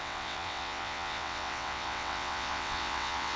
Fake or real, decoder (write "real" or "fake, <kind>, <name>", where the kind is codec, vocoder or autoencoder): fake, vocoder, WaveNeXt